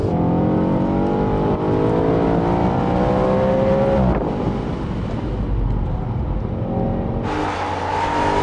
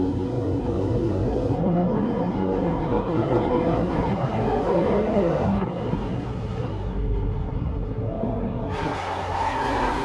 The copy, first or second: second